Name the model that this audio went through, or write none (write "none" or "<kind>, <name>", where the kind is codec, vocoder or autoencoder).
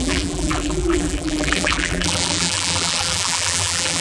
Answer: vocoder, BigVGAN v2